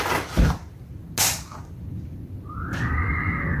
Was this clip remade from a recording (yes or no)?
no